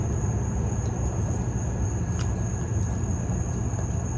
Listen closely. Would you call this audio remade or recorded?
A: recorded